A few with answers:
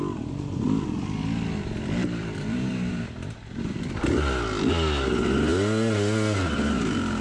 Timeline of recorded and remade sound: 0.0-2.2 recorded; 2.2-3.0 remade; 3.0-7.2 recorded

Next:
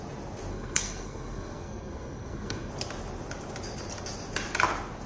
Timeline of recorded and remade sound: 0.0-0.5 recorded; 0.5-2.7 remade; 2.7-5.1 recorded

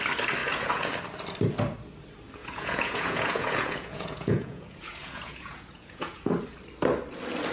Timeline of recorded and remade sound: 0.0-0.4 recorded; 0.4-0.9 remade; 0.9-2.4 recorded; 2.4-6.3 remade; 6.3-7.5 recorded

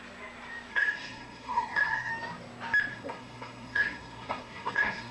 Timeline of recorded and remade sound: 0.0-0.7 recorded; 0.7-2.1 remade; 2.1-2.9 recorded; 2.9-5.1 remade

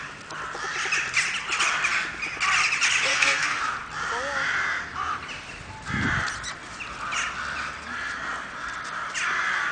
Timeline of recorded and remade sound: 0.0-3.1 recorded; 3.1-3.6 remade; 3.6-9.7 recorded

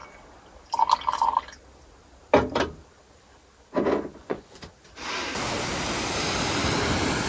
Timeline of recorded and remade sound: 0.0-4.2 recorded; 4.2-4.7 remade; 4.7-7.3 recorded

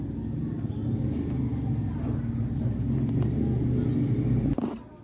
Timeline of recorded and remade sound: 0.0-5.0 recorded

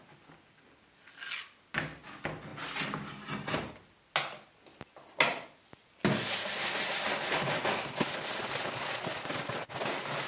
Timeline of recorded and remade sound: 0.0-10.3 recorded